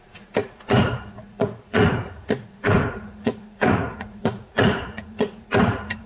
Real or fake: fake